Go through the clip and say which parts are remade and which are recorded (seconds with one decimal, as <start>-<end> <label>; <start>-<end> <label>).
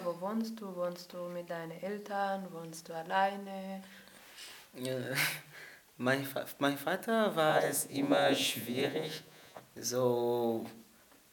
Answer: 0.0-7.5 recorded; 7.5-9.6 remade; 9.6-11.3 recorded